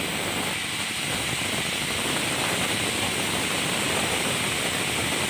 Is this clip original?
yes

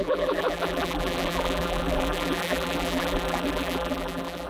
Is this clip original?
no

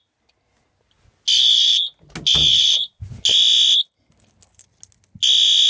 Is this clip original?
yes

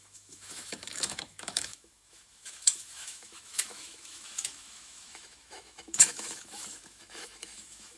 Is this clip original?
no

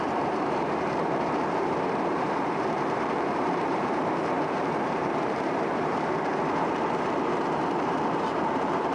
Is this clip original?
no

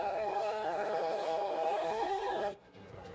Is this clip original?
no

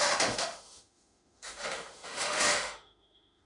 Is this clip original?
no